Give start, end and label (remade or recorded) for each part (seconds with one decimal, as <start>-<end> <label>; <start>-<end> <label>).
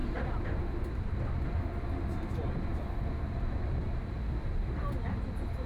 0.0-5.7 recorded